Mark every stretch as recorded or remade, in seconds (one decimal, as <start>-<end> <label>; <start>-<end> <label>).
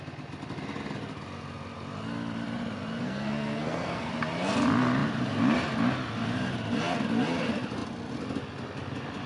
0.0-3.0 recorded; 3.0-4.1 remade; 4.1-9.3 recorded